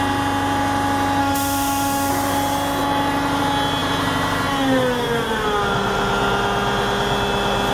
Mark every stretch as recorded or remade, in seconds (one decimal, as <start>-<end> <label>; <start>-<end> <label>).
0.0-1.2 recorded; 1.2-2.1 remade; 2.1-7.7 recorded